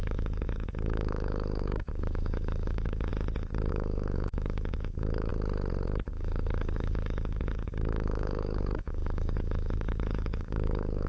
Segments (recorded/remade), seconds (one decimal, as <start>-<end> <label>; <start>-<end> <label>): 0.0-3.1 remade; 3.1-3.7 recorded; 3.7-5.3 remade; 5.3-6.1 recorded; 6.1-11.1 remade